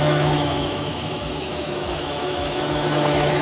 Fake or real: fake